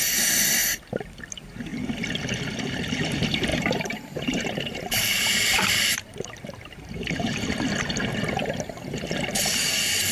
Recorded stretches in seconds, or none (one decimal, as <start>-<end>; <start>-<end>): 0.0-3.5; 7.4-10.1